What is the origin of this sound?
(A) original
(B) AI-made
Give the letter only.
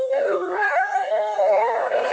B